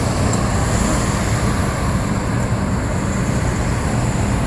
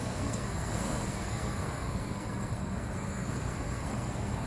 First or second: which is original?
first